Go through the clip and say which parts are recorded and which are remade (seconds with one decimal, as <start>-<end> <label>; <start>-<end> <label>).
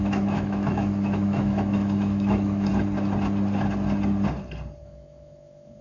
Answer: 0.0-2.7 remade; 2.7-4.8 recorded; 4.8-5.8 remade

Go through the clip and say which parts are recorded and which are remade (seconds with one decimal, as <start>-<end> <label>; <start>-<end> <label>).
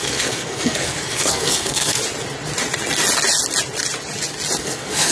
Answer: 0.0-2.0 remade; 2.0-4.6 recorded; 4.6-5.1 remade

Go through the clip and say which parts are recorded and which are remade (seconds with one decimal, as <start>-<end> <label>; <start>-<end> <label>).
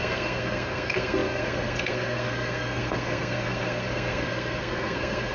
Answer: 0.0-5.3 remade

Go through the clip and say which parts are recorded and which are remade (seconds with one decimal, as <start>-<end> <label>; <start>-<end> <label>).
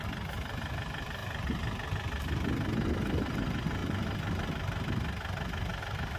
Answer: 0.0-6.2 recorded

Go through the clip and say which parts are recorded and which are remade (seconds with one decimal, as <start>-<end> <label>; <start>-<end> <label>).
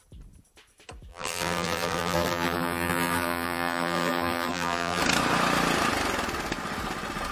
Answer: 0.0-1.1 recorded; 1.1-5.0 remade; 5.0-7.3 recorded